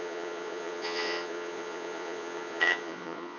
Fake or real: fake